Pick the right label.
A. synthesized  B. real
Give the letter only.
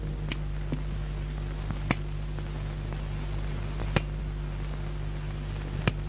B